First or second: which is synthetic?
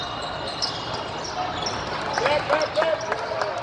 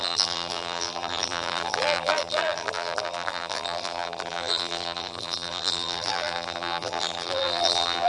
second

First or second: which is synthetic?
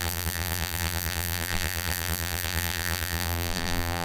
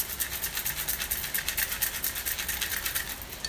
first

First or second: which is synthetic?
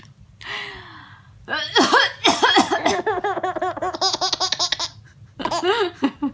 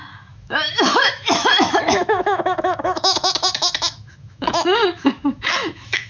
second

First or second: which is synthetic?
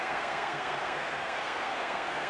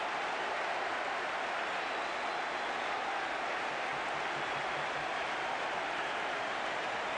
first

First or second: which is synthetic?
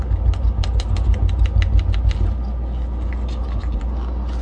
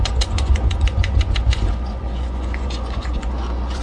second